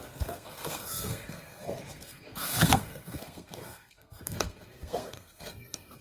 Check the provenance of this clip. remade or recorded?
remade